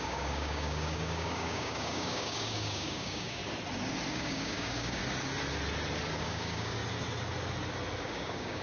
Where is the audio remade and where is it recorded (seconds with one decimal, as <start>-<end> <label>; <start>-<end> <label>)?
0.0-3.4 remade; 3.4-4.1 recorded; 4.1-5.0 remade; 5.0-6.2 recorded; 6.2-6.8 remade; 6.8-8.0 recorded; 8.0-8.6 remade